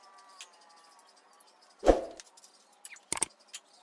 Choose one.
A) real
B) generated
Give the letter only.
A